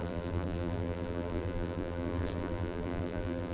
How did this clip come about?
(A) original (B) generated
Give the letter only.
B